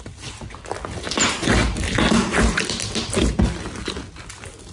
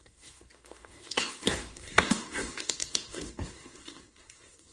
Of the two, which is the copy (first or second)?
second